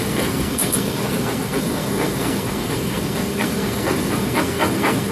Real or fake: fake